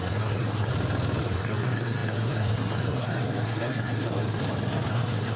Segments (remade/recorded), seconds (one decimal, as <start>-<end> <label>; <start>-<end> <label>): 0.0-0.7 remade; 0.7-1.2 recorded; 1.2-4.4 remade; 4.4-4.9 recorded; 4.9-5.4 remade